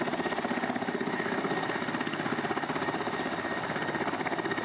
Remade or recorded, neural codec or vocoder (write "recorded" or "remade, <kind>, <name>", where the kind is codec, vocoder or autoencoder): recorded